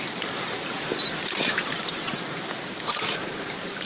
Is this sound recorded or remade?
recorded